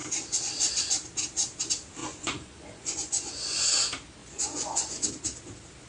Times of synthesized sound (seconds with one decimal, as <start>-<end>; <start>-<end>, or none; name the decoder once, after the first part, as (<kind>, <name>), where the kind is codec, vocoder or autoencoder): 2.0-3.7 (vocoder, Vocos); 4.2-5.1